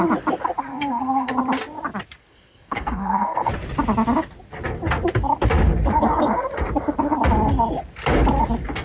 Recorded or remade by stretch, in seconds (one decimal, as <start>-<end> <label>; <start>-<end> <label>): 0.0-0.7 recorded; 0.7-1.3 remade; 1.3-2.2 recorded; 2.2-3.5 remade; 3.5-8.8 recorded